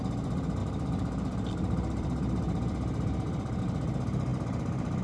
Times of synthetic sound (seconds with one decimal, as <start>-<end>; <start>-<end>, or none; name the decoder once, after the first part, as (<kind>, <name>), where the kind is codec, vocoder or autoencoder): 0.6-3.6 (vocoder, BigVGAN v2)